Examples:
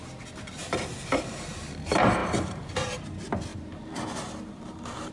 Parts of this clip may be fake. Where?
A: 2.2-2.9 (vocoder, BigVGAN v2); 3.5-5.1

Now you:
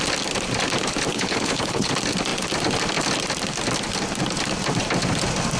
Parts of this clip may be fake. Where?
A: 1.1-1.9 (codec, HILCodec)

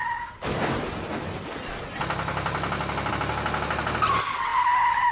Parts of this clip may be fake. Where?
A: none

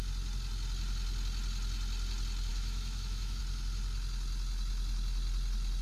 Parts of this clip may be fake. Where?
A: 2.5-3.4 (autoencoder, DAC-VAE)

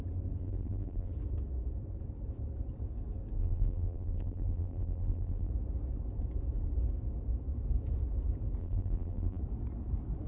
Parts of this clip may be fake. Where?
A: 0.4-1.1 (vocoder, BigVGAN v2); 3.4-5.5; 8.6-9.4

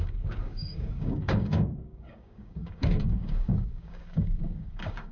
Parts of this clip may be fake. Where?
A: 0.0-5.1 (codec, DAC)

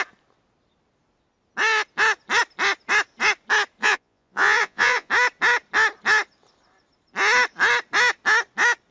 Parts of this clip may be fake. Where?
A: 3.8-5.1 (vocoder, Vocos)

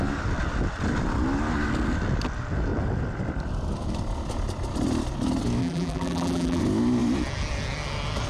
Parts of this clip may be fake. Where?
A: 5.6-6.6 (vocoder, BigVGAN v2)